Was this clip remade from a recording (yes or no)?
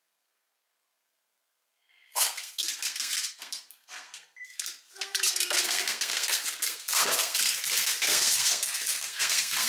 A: yes